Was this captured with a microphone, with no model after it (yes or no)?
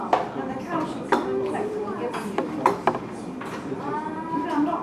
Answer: no